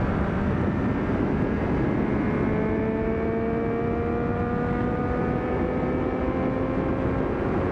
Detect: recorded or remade recorded